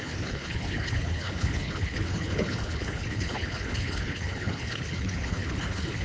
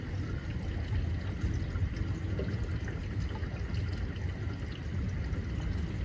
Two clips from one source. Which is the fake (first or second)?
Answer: first